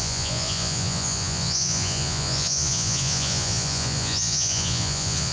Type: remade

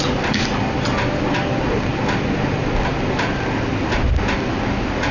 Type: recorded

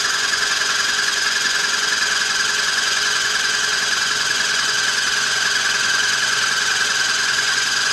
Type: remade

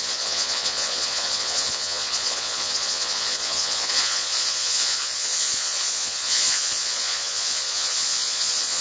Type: remade